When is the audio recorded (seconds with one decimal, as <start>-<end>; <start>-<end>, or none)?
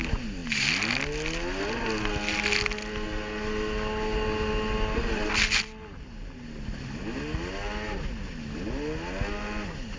0.0-10.0